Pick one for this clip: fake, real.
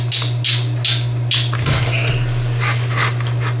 real